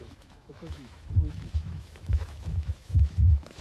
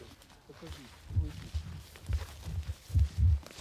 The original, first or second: second